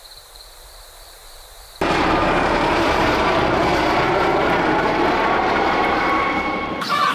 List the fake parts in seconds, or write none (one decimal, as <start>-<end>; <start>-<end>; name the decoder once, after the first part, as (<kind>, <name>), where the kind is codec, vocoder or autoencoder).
0.0-3.7 (vocoder, BigVGAN v2); 4.2-7.1